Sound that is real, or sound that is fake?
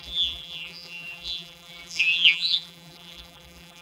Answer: fake